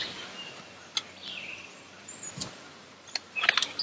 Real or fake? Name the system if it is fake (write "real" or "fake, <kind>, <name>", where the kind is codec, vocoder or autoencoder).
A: real